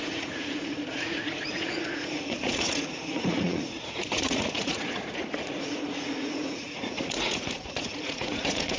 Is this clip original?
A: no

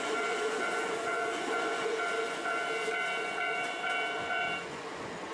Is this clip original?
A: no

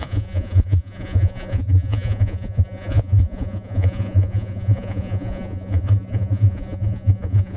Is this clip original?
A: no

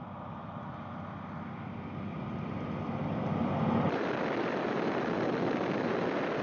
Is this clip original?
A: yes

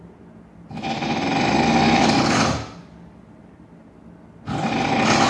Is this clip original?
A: yes